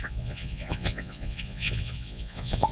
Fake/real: fake